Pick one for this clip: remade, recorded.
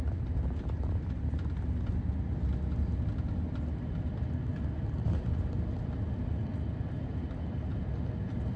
recorded